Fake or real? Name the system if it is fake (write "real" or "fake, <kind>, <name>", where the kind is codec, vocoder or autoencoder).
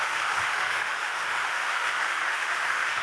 fake, autoencoder, DAC-VAE